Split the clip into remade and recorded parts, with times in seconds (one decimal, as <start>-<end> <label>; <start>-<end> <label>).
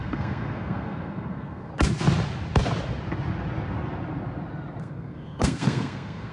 0.0-1.7 remade; 1.7-4.8 recorded; 4.8-6.3 remade